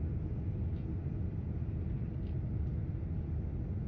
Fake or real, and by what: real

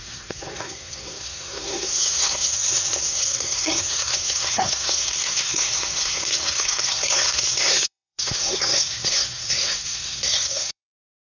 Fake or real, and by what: fake, codec, SNAC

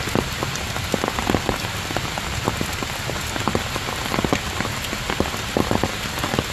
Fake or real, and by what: real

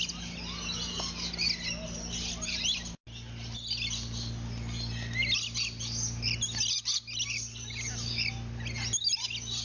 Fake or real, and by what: real